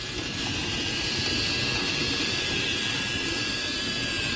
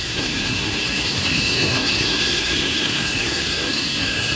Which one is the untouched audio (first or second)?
first